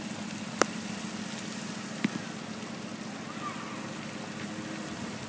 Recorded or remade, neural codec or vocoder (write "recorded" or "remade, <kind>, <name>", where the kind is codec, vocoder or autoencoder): recorded